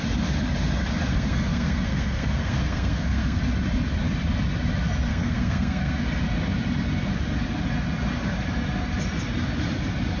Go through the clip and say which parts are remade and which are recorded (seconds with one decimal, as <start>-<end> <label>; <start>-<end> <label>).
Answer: 0.0-1.1 recorded; 1.1-3.4 remade; 3.4-5.1 recorded; 5.1-6.0 remade; 6.0-10.2 recorded